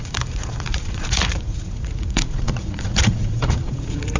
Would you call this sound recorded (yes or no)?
no